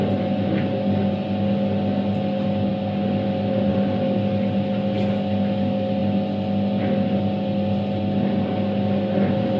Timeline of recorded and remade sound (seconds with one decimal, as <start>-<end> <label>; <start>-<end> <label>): 0.0-9.6 recorded